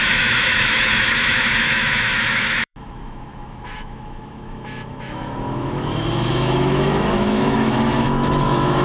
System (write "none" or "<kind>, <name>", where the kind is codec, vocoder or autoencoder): autoencoder, DAC-VAE